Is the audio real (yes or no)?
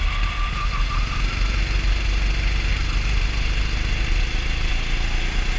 yes